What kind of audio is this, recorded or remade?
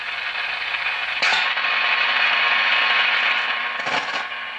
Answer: recorded